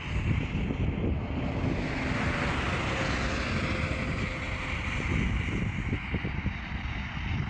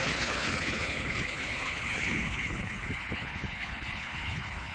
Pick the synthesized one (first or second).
second